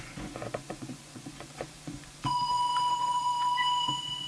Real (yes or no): no